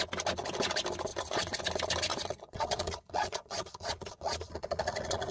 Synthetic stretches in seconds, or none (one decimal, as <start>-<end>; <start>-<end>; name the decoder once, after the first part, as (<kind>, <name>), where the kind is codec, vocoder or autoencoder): 1.1-1.6 (vocoder, Vocos); 2.1-5.3